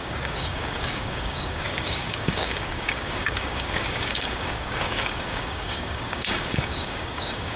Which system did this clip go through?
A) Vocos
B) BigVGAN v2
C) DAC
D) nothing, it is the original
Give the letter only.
C